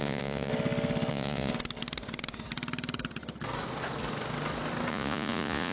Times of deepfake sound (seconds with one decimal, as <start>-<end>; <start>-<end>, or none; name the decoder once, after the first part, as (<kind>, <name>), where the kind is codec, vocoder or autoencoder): 0.0-0.5 (vocoder, Vocos); 1.1-1.5; 4.9-5.7